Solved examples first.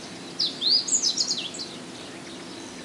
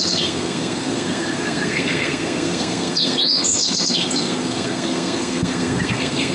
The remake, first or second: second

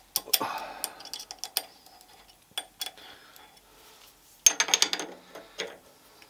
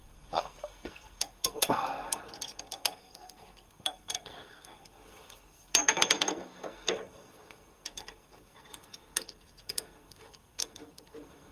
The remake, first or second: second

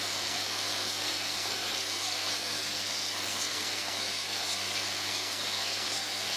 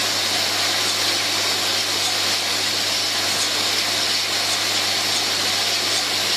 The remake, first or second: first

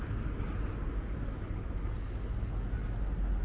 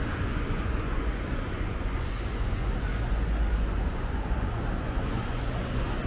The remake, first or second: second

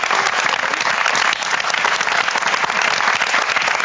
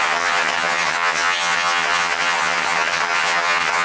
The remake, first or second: second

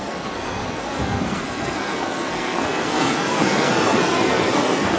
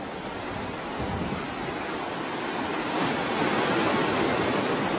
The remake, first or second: first